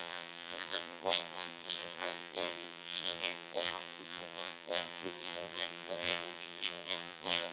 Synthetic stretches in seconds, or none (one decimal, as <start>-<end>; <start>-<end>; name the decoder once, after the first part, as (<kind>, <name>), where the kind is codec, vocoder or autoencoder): 0.0-7.5 (vocoder, BigVGAN v2)